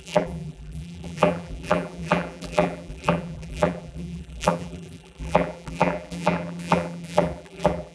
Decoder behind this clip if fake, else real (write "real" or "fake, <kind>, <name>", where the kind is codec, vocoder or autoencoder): fake, vocoder, BigVGAN v2